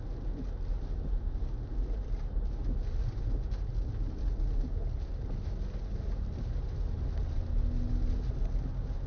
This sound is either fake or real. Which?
real